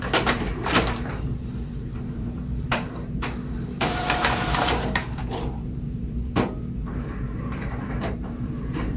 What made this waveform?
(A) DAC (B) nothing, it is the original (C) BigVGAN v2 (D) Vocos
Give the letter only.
C